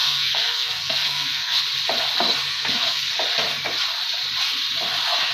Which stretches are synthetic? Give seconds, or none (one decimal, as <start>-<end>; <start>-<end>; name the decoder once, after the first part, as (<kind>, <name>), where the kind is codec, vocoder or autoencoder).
0.0-1.6 (codec, SNAC); 2.5-3.1